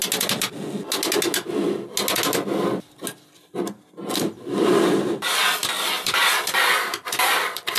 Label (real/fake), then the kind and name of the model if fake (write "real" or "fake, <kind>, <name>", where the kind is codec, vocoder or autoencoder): real